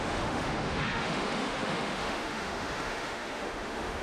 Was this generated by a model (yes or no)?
yes